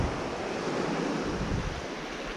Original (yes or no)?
yes